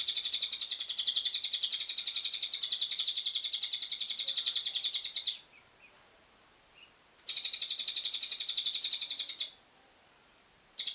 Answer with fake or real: real